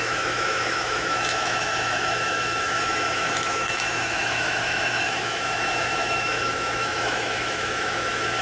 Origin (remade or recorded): remade